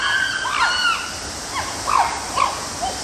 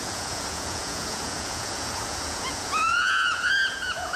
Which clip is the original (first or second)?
first